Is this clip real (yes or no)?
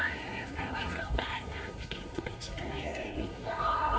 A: no